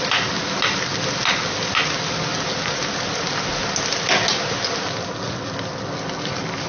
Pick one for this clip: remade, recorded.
recorded